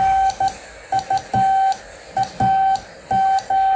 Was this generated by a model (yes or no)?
no